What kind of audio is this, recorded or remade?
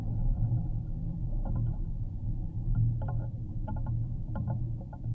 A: remade